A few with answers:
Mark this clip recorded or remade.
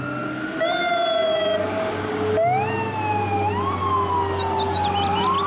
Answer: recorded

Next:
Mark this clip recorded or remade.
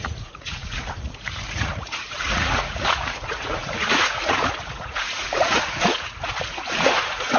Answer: remade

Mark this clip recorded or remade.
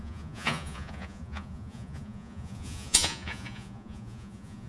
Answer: remade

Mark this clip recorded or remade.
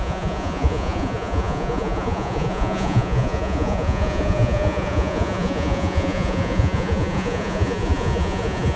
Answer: remade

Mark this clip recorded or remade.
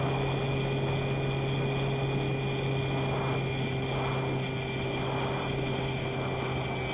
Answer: recorded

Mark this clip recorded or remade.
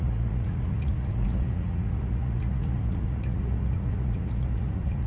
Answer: remade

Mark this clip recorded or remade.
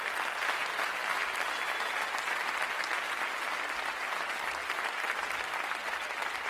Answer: recorded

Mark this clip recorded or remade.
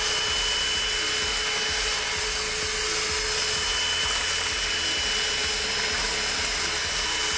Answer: recorded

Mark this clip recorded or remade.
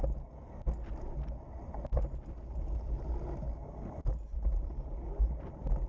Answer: recorded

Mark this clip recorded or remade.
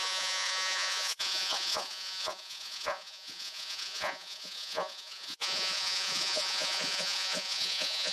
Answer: remade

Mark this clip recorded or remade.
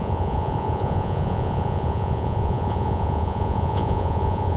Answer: remade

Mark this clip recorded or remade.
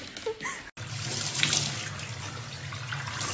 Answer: recorded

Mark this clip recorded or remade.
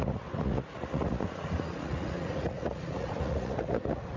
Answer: remade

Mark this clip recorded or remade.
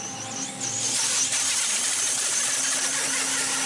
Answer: recorded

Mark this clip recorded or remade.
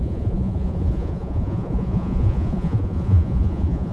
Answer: remade